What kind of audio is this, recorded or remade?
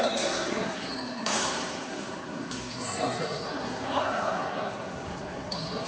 remade